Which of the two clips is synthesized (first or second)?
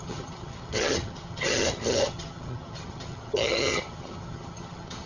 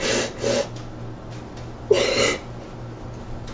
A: first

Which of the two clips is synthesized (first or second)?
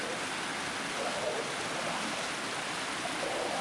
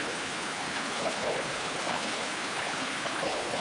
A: second